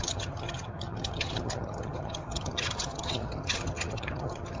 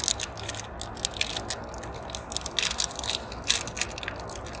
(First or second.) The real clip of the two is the second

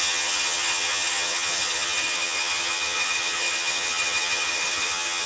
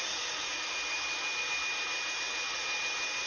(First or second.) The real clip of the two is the second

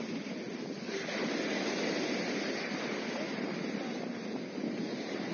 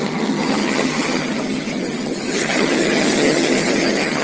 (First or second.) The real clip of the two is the first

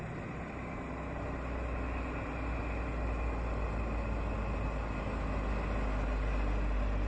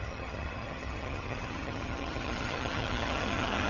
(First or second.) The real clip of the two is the first